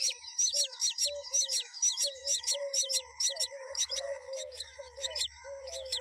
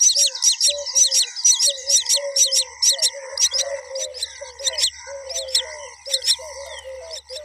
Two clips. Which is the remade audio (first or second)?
first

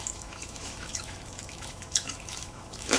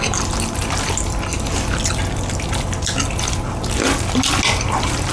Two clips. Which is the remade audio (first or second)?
first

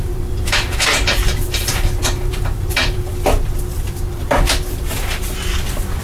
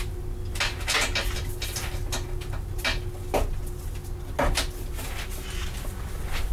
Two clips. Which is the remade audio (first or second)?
first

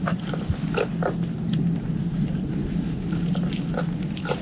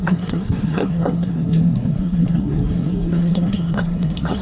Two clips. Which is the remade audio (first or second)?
second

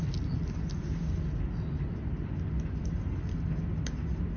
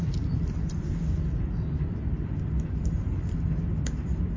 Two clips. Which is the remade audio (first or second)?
second